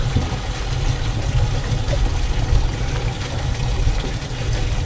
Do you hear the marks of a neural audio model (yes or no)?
no